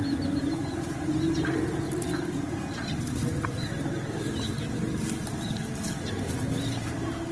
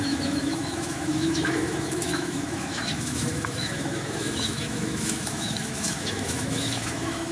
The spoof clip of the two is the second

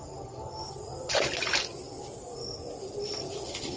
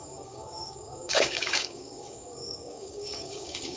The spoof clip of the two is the second